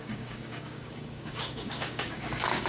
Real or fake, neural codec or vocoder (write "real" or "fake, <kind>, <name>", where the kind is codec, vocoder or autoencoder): fake, codec, DAC